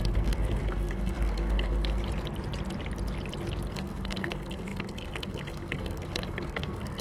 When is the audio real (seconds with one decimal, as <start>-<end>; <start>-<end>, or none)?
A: 2.0-3.7